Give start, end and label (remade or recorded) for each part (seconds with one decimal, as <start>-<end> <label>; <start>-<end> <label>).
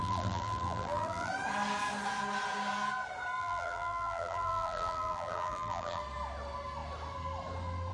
0.0-1.3 remade; 1.3-3.4 recorded; 3.4-6.0 remade; 6.0-7.9 recorded